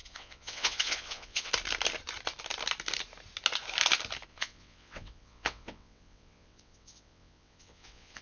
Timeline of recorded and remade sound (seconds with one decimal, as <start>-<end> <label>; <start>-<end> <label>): 0.0-1.5 remade; 1.5-4.3 recorded; 4.3-8.2 remade